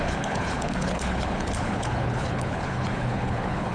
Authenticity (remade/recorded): remade